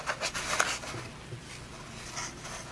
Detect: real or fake real